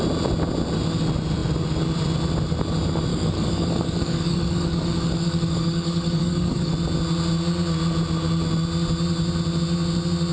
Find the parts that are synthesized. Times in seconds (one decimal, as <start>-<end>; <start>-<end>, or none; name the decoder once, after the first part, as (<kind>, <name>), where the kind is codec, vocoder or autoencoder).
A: 3.1-6.7 (codec, DAC)